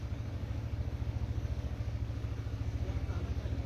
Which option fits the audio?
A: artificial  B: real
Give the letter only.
A